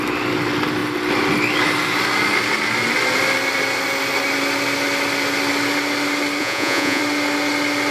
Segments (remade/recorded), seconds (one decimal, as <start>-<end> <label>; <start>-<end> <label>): 0.0-6.4 recorded; 6.4-7.0 remade; 7.0-7.9 recorded